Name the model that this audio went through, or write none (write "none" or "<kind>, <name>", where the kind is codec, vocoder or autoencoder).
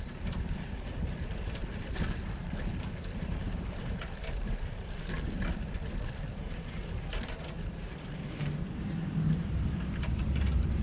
vocoder, BigVGAN v2